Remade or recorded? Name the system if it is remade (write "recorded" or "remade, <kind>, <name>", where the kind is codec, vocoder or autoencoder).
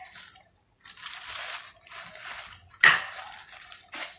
recorded